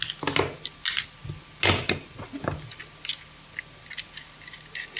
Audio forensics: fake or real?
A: real